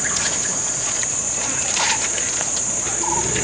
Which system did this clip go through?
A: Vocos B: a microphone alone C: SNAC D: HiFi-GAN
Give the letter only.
A